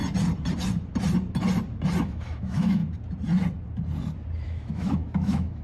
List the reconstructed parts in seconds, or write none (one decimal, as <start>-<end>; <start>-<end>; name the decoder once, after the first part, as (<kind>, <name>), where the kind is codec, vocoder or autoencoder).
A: 2.0-2.8 (autoencoder, DAC-VAE); 4.4-5.6